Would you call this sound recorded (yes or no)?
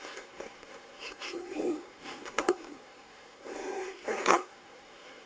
no